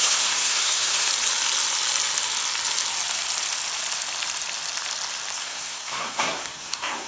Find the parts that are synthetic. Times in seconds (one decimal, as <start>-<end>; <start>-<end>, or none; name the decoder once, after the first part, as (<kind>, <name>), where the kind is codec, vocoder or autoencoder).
0.0-1.1 (codec, SNAC); 5.4-7.1